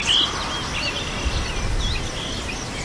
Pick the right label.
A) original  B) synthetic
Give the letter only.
A